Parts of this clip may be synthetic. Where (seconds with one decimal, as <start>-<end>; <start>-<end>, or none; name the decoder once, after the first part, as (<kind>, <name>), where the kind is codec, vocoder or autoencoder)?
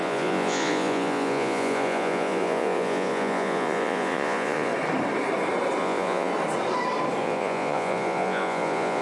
0.0-4.7 (vocoder, Vocos); 5.8-6.3; 7.2-9.0